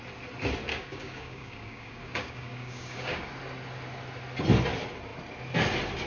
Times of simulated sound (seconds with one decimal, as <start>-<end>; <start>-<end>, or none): 0.7-3.3